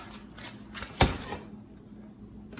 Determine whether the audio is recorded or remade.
recorded